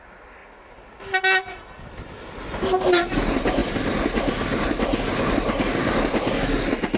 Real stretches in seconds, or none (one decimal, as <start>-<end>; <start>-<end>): 0.0-7.0